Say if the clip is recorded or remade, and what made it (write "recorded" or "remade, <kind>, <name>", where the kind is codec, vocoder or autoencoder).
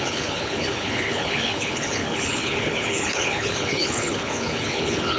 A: remade, codec, HILCodec